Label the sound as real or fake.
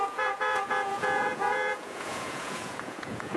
fake